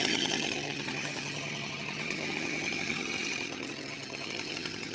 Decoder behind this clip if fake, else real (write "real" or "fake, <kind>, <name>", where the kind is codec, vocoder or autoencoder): fake, vocoder, HiFi-GAN